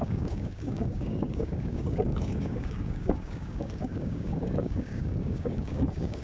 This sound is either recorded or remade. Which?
remade